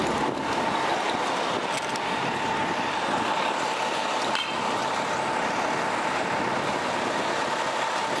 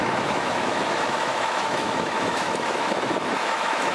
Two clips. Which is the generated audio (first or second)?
second